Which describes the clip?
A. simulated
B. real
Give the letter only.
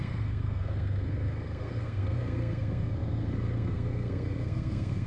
A